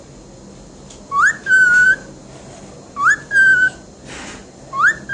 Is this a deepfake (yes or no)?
no